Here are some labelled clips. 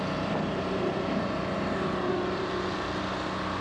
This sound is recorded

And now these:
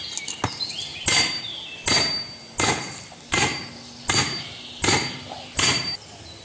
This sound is recorded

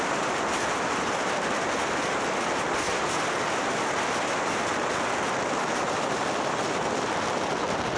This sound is recorded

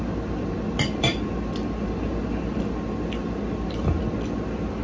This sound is recorded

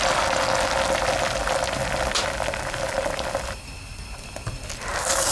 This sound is recorded